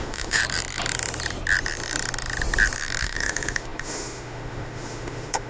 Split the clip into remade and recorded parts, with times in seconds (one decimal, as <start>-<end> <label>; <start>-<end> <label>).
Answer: 0.0-0.4 remade; 0.4-3.0 recorded; 3.0-5.5 remade

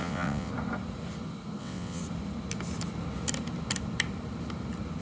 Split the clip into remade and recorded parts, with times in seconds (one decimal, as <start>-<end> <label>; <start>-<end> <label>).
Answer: 0.0-0.5 remade; 0.5-1.6 recorded; 1.6-2.0 remade; 2.0-5.0 recorded